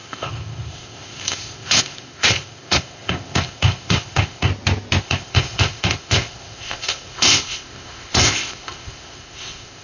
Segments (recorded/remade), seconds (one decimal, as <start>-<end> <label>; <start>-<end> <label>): 0.0-4.5 remade; 4.5-5.0 recorded; 5.0-9.8 remade

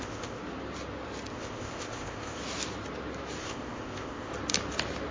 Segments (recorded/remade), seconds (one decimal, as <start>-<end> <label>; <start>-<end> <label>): 0.0-0.4 remade; 0.4-1.3 recorded; 1.3-2.4 remade; 2.4-3.4 recorded; 3.4-4.3 remade; 4.3-5.1 recorded

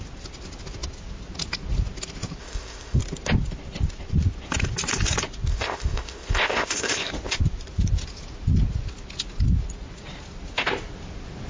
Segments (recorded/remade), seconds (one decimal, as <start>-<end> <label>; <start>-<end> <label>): 0.0-2.4 recorded; 2.4-3.0 remade; 3.0-5.5 recorded; 5.5-7.1 remade; 7.1-11.5 recorded